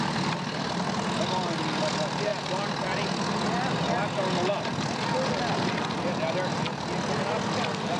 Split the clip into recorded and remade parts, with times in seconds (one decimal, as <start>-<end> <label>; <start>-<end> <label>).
0.0-8.0 recorded